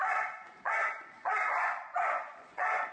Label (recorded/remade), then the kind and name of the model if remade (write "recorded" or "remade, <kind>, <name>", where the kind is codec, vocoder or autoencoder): remade, vocoder, Vocos